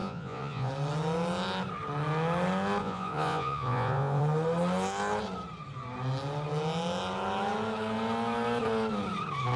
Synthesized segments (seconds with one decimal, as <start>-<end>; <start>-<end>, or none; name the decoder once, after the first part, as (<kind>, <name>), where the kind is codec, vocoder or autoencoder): 0.0-0.7 (vocoder, Vocos); 2.8-4.2